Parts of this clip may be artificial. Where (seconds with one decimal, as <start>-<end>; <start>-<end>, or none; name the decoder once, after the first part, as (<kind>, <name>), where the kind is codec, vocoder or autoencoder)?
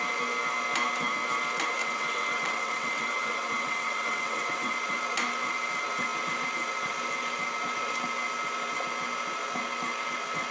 1.8-4.7 (vocoder, WaveNeXt)